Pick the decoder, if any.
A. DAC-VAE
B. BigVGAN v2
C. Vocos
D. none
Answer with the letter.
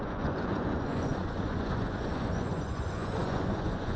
C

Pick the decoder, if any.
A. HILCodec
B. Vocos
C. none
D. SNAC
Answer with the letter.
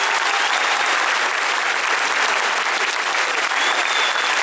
C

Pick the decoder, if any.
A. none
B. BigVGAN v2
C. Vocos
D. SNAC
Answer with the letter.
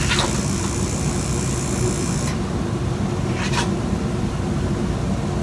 A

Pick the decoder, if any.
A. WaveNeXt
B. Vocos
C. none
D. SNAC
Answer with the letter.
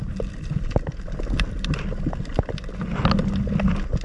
C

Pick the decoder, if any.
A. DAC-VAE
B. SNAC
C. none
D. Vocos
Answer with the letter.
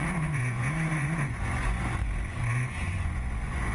D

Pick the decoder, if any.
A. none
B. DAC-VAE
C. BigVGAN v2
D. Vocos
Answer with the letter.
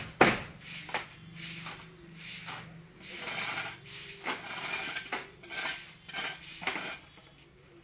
A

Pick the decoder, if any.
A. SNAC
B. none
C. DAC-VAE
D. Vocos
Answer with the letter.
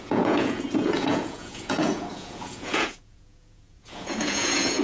D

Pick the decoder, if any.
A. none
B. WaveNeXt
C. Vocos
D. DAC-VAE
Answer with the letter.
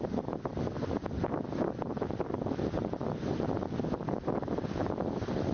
A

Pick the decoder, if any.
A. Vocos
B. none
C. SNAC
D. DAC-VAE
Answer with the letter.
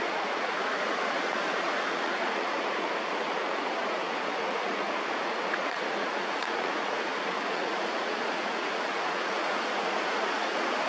A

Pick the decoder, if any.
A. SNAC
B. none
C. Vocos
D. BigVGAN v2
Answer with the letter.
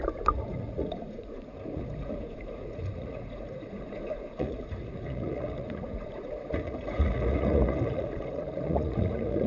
C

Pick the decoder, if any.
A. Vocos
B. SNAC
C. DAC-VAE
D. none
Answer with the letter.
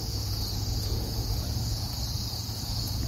A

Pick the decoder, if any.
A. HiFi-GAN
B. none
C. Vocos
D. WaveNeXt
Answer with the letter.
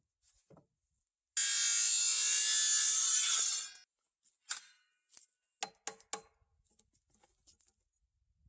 B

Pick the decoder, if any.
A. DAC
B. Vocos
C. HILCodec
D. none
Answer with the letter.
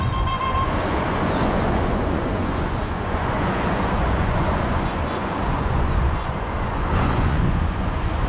B